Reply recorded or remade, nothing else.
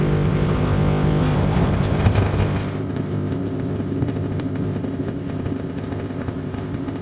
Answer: remade